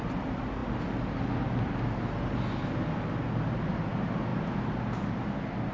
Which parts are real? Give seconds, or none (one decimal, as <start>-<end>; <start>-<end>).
0.0-5.7

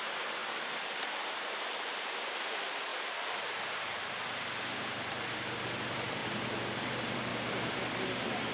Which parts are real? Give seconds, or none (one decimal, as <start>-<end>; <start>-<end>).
0.0-6.2; 6.8-7.3; 7.8-8.5

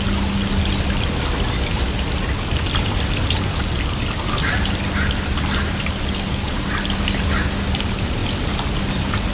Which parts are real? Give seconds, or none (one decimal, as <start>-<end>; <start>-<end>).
0.0-9.3

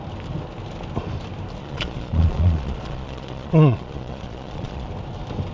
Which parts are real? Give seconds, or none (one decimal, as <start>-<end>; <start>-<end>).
0.0-1.6; 4.9-5.5